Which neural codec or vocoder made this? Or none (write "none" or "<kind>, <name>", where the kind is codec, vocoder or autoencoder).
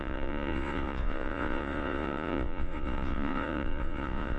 vocoder, Vocos